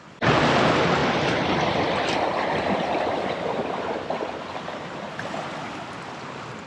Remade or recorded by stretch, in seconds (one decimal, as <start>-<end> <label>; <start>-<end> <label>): 0.0-6.7 recorded